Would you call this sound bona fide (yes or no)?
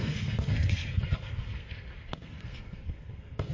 no